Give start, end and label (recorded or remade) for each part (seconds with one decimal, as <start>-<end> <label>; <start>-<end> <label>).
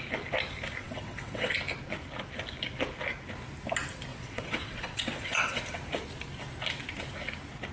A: 0.0-0.8 recorded; 0.8-1.5 remade; 1.5-4.1 recorded; 4.1-5.6 remade; 5.6-7.7 recorded